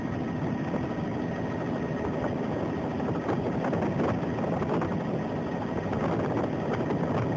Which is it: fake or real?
real